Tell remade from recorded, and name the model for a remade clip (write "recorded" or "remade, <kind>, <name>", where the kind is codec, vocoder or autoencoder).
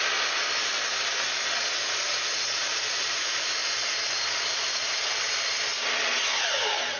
recorded